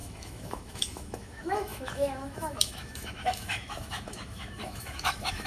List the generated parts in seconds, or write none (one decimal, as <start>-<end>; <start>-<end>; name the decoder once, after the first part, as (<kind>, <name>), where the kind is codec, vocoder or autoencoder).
0.0-5.5 (autoencoder, DAC-VAE)